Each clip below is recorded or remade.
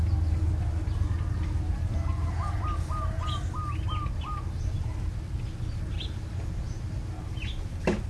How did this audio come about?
recorded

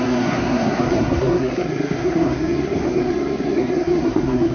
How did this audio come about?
remade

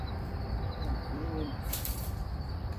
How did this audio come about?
remade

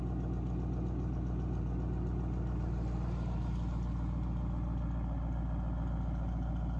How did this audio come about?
recorded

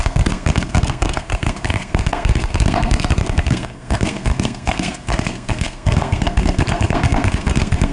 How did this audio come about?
remade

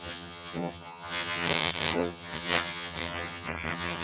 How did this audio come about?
remade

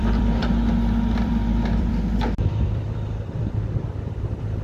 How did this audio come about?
remade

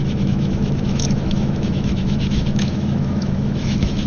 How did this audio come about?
remade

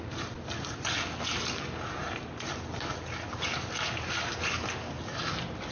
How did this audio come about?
recorded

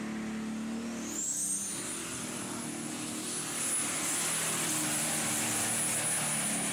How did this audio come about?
recorded